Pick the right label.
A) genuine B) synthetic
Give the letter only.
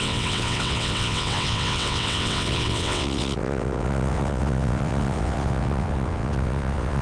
B